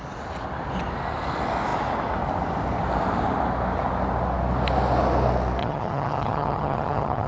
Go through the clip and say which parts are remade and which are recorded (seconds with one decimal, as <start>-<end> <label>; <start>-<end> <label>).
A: 0.0-5.6 recorded; 5.6-7.3 remade